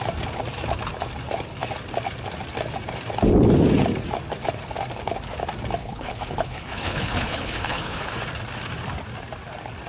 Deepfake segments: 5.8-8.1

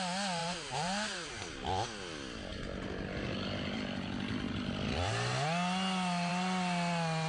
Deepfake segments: 0.4-1.3

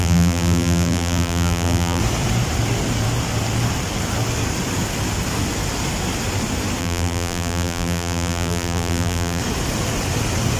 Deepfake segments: 0.0-2.0; 6.8-9.4